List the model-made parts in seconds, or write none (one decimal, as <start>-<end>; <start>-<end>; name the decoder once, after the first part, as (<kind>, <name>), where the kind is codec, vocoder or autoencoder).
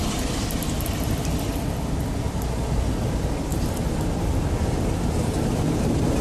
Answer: none